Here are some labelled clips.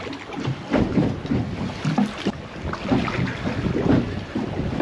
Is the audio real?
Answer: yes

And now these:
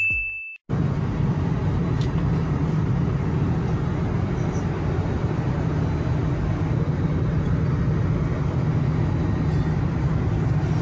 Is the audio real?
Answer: yes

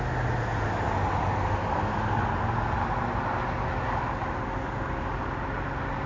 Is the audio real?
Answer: yes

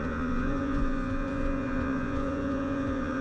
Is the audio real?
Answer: no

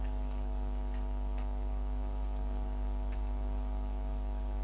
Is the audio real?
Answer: no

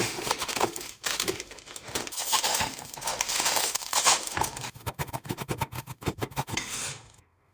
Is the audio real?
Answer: no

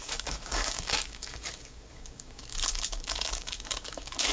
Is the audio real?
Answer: no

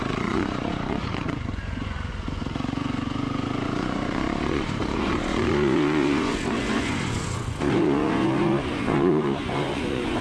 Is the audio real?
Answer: no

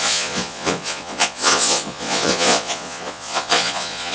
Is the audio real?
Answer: no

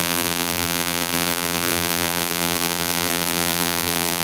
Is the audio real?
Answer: no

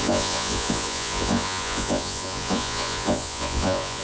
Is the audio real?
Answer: no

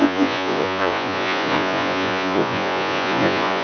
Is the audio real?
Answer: no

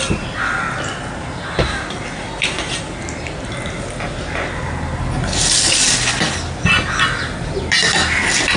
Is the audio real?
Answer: yes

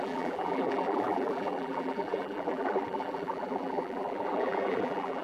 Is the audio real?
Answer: no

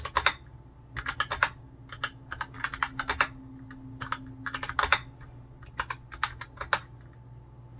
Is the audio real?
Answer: yes